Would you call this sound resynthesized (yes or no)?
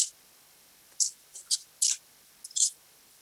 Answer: no